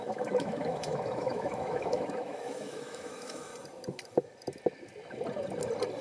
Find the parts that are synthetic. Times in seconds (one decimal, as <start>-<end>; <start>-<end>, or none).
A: 0.0-3.5